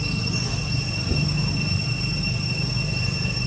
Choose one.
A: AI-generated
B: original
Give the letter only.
A